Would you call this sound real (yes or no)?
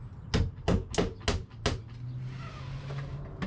yes